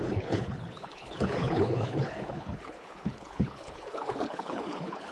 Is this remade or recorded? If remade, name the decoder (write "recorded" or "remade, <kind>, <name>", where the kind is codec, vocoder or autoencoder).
remade, codec, HILCodec